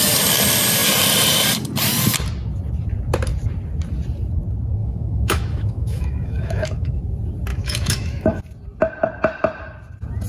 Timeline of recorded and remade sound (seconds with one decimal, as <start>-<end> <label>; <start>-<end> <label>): 0.0-4.8 recorded; 4.8-7.0 remade; 7.0-7.5 recorded; 7.5-8.4 remade; 8.4-10.3 recorded

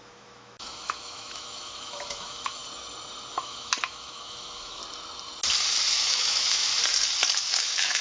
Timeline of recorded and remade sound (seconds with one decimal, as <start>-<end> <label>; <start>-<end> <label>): 0.0-2.6 remade; 2.6-3.3 recorded; 3.3-4.8 remade; 4.8-5.9 recorded; 5.9-6.7 remade; 6.7-7.4 recorded; 7.4-8.0 remade

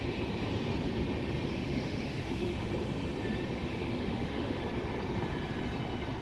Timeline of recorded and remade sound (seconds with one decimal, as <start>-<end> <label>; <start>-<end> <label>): 0.0-1.5 recorded; 1.5-2.7 remade; 2.7-3.7 recorded; 3.7-4.6 remade; 4.6-6.2 recorded